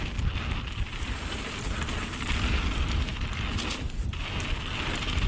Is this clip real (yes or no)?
yes